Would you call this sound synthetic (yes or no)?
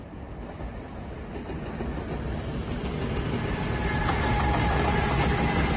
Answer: no